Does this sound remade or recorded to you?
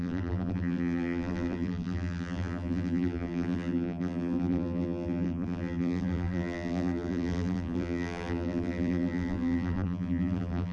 remade